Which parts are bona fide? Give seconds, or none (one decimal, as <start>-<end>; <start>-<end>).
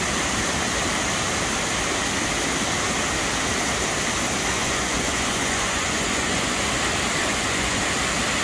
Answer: 0.0-4.5; 6.6-7.2; 7.8-8.4